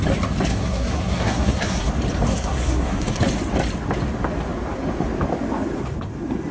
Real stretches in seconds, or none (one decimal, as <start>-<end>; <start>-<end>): 0.0-0.5; 1.9-2.3; 3.2-6.5